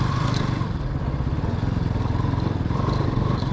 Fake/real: fake